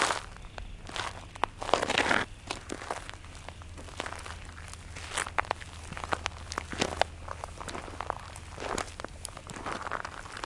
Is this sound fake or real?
real